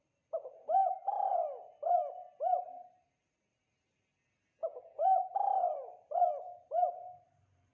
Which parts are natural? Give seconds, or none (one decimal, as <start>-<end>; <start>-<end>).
none